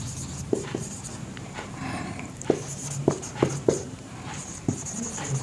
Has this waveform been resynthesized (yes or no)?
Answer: yes